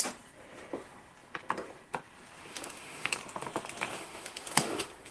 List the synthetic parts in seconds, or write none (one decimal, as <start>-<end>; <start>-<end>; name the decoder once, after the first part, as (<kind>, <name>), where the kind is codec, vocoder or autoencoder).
2.5-3.1 (autoencoder, DAC-VAE); 3.9-5.1